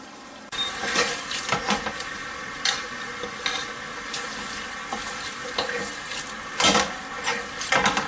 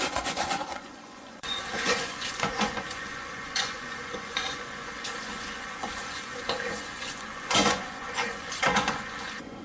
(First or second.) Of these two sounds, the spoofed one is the second